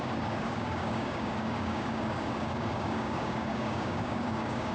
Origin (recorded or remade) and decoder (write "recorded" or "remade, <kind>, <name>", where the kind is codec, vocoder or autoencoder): remade, codec, DAC